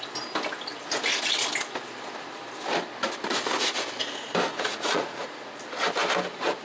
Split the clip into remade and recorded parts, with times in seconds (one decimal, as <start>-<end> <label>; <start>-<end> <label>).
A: 0.0-4.5 recorded; 4.5-5.5 remade; 5.5-6.6 recorded